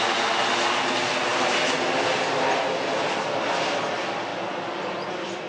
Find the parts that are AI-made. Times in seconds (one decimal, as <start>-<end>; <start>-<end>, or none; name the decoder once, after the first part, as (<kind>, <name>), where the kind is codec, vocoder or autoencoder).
none